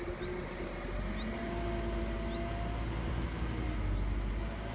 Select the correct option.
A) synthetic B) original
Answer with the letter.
B